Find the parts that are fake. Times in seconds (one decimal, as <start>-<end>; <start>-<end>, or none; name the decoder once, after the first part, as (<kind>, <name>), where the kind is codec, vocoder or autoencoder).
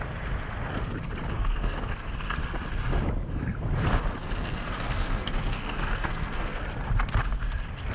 1.3-2.3 (codec, SNAC); 4.2-6.6